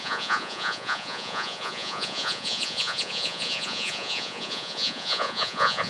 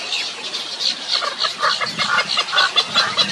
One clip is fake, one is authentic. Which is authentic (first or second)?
second